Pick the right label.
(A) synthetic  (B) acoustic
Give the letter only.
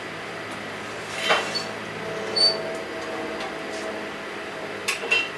B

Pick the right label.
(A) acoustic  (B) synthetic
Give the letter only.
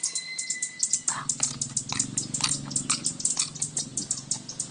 A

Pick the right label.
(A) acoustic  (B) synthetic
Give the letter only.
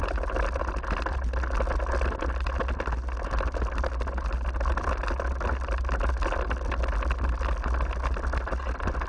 A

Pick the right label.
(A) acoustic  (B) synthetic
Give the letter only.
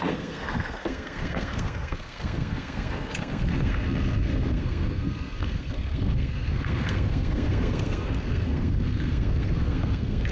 B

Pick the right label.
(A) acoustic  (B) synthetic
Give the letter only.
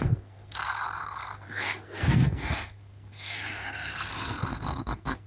B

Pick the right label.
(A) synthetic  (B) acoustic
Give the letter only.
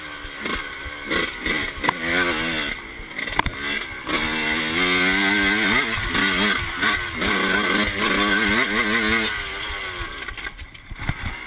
B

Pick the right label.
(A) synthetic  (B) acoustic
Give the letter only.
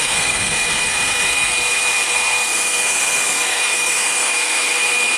A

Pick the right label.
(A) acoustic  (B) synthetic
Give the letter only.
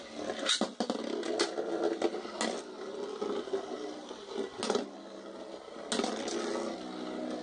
A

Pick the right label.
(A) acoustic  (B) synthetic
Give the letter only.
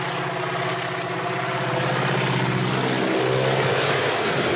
A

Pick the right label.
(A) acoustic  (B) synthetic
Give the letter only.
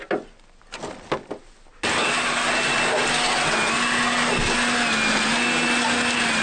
A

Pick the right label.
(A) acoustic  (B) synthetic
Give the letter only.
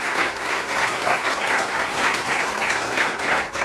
B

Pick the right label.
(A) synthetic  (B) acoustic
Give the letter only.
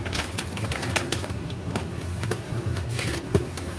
A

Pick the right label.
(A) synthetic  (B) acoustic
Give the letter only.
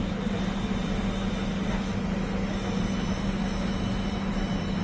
B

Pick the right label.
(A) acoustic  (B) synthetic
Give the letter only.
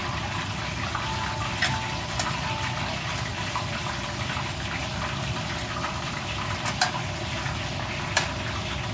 A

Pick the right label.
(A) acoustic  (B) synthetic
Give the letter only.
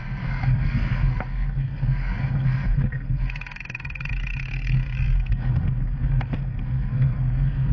B